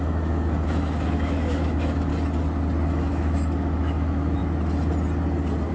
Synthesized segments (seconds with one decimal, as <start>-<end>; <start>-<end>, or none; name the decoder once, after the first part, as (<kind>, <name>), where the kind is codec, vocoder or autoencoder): 0.0-2.1 (autoencoder, DAC-VAE); 2.9-4.4